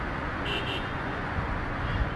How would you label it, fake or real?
fake